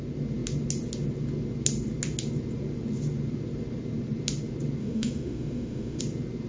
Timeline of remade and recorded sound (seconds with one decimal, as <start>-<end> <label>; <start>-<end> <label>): 0.0-4.8 recorded; 4.8-6.0 remade; 6.0-6.5 recorded